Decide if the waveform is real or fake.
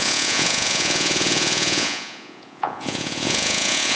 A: fake